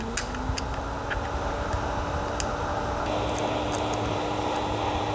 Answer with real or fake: real